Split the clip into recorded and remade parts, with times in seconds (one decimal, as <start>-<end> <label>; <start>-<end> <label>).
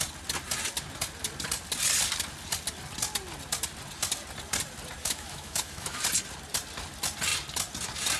0.0-5.0 recorded; 5.0-6.0 remade; 6.0-8.2 recorded